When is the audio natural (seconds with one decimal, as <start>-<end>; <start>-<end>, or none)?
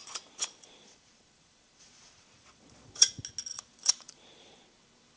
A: 3.1-3.5; 4.6-5.2